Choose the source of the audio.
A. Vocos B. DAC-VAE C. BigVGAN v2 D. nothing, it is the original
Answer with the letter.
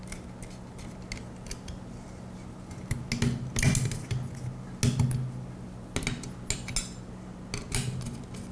D